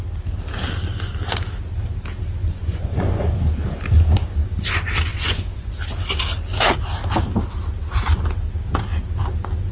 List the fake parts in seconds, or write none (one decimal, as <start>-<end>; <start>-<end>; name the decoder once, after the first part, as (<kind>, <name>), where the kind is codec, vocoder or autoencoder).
2.4-3.2 (vocoder, Vocos); 5.1-5.7